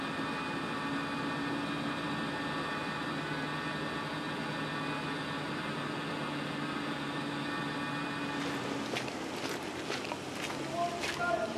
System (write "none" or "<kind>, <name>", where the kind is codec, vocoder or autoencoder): none